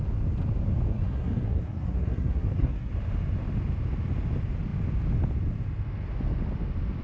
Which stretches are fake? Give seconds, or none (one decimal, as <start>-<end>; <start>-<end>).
0.9-2.9